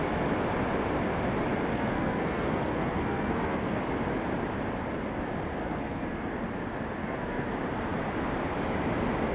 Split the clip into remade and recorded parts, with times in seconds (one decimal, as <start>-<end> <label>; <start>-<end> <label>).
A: 0.0-1.7 recorded; 1.7-3.8 remade; 3.8-5.6 recorded; 5.6-6.3 remade; 6.3-7.0 recorded; 7.0-7.5 remade; 7.5-9.3 recorded